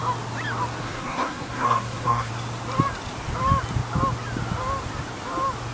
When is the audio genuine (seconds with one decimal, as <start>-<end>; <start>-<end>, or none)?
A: 0.0-0.8; 2.3-5.7